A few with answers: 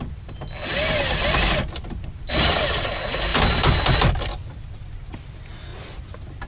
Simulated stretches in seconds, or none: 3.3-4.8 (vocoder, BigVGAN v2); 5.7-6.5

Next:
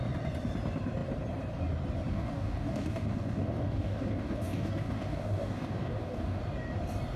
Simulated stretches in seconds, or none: 2.1-6.4 (codec, DAC)

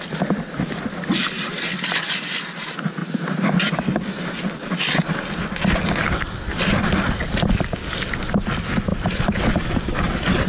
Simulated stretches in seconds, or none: none

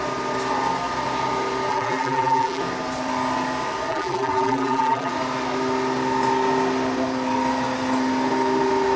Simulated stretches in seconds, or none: 1.7-2.6 (vocoder, BigVGAN v2); 3.9-5.1

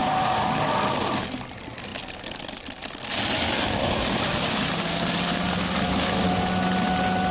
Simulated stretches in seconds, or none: 0.0-0.5 (vocoder, Vocos)